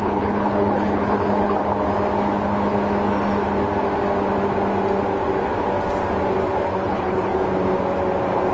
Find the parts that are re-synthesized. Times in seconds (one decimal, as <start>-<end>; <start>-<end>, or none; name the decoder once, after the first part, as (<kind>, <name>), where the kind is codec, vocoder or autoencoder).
0.0-1.6 (codec, HILCodec); 6.6-7.3